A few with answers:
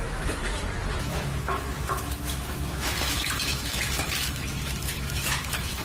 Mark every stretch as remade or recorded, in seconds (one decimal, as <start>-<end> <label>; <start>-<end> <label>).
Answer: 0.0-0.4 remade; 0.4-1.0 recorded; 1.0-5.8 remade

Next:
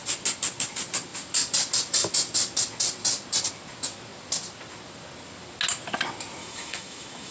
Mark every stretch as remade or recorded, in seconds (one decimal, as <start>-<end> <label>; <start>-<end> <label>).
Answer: 0.0-6.4 recorded; 6.4-7.3 remade

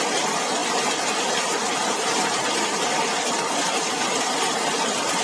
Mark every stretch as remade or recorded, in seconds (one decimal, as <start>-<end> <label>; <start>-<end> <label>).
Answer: 0.0-5.2 recorded

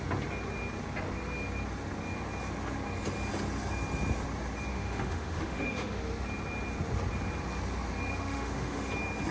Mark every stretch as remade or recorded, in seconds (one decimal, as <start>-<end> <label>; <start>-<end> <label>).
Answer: 0.0-4.7 recorded; 4.7-6.0 remade; 6.0-8.1 recorded; 8.1-8.9 remade; 8.9-9.3 recorded